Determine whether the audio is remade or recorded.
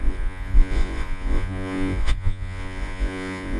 remade